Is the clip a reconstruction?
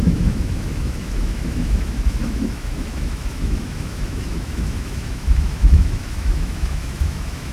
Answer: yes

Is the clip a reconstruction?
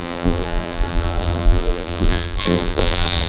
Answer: yes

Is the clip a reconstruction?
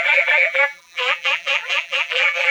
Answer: yes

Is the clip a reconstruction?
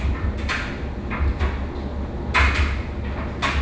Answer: no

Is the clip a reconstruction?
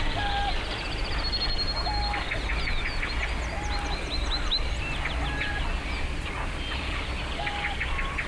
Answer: no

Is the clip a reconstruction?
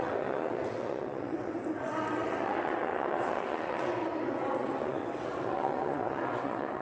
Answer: yes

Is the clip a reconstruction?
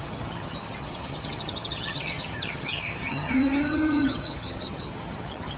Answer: yes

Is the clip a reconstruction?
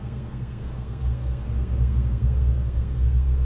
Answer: yes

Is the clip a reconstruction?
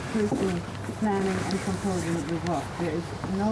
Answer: no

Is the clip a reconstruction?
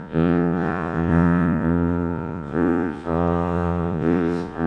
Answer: yes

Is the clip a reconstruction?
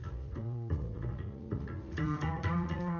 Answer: yes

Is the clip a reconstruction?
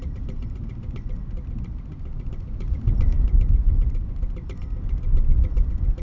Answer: no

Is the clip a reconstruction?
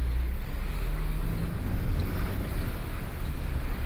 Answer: yes